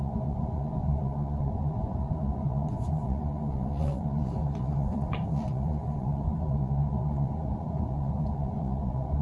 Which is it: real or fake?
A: fake